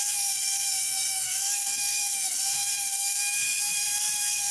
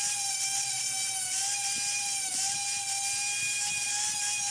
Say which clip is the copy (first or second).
first